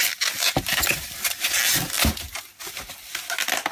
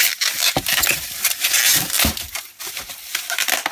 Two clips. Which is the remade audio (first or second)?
second